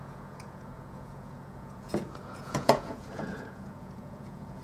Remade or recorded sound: remade